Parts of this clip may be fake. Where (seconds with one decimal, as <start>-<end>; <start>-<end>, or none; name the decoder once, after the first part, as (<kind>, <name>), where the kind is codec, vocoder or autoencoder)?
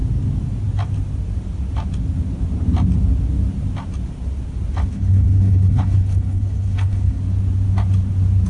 4.9-7.2 (codec, HILCodec)